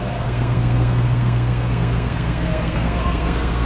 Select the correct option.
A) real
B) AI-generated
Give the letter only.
B